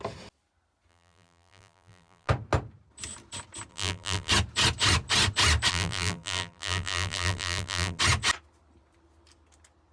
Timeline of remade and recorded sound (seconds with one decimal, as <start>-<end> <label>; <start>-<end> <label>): 0.0-0.9 recorded; 0.9-2.3 remade; 2.3-3.7 recorded; 3.7-4.3 remade; 4.3-5.7 recorded; 5.7-8.0 remade; 8.0-9.9 recorded